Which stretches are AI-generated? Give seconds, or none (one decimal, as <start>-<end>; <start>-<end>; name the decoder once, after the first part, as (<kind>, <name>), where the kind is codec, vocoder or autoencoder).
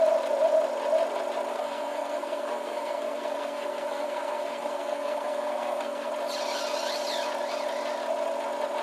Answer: 1.5-6.1 (codec, SNAC)